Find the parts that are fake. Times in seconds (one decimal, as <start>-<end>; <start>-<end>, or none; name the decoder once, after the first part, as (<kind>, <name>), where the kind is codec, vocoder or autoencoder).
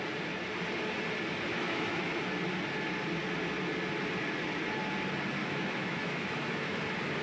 1.5-2.2 (autoencoder, DAC-VAE); 5.4-6.8